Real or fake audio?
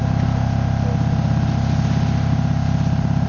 real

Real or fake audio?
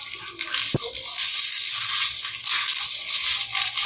real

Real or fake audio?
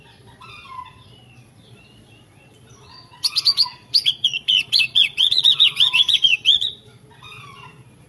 fake